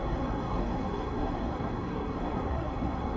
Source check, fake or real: fake